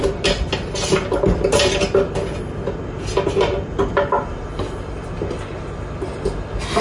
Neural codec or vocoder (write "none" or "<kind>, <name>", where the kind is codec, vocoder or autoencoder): none